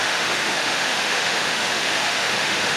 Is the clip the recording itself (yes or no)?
no